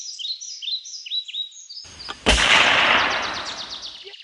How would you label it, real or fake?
real